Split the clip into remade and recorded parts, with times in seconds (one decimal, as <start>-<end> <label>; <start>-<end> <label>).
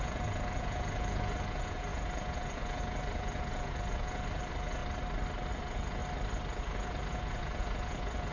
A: 0.0-4.8 remade; 4.8-5.5 recorded; 5.5-6.0 remade; 6.0-6.6 recorded; 6.6-8.3 remade